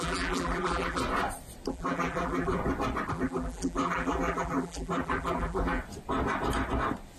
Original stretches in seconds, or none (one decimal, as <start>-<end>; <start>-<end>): 1.0-1.7; 2.6-3.1; 5.8-7.2